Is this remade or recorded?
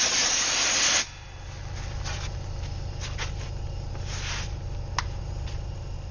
recorded